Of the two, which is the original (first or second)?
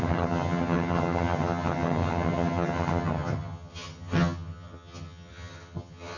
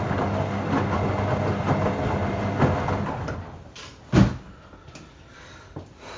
second